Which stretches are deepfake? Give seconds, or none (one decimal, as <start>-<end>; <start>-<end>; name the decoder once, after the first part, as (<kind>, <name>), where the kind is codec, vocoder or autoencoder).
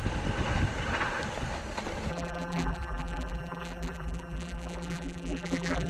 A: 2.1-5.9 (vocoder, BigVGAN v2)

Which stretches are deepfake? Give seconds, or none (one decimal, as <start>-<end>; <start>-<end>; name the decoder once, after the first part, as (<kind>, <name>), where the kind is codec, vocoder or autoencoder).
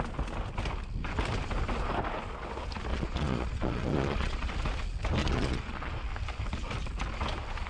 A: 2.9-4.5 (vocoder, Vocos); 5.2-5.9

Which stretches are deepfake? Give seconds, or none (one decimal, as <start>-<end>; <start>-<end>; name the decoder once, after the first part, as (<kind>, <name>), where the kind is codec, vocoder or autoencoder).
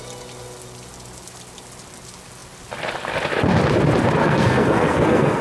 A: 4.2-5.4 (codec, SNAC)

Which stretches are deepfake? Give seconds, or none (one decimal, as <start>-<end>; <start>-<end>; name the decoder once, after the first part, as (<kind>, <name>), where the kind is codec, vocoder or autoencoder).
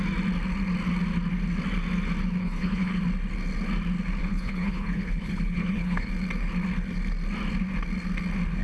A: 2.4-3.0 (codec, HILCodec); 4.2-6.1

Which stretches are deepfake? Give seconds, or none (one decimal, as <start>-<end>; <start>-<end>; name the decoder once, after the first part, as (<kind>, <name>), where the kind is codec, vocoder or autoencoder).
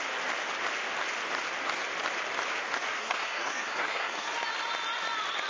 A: 3.0-4.3 (codec, SNAC)